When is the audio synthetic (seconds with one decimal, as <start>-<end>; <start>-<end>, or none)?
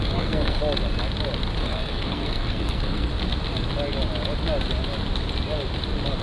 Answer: 0.0-0.6; 1.6-3.1